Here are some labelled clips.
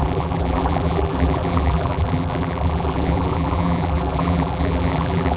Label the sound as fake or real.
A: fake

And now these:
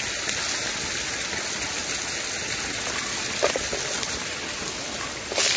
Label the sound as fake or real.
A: real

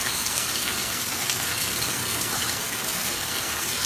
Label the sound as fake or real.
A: fake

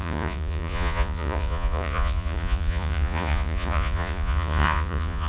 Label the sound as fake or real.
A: fake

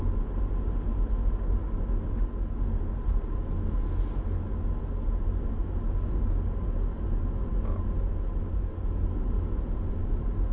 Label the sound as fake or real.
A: real